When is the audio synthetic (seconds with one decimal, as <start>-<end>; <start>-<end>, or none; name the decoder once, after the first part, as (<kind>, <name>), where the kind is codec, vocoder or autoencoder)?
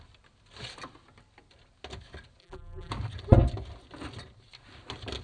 2.4-2.9 (vocoder, BigVGAN v2)